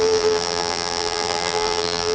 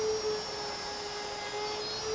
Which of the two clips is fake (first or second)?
first